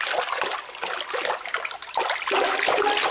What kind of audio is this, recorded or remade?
recorded